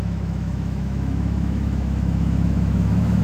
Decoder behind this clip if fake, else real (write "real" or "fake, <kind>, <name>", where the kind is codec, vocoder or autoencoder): fake, autoencoder, DAC-VAE